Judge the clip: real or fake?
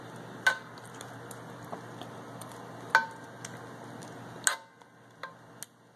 real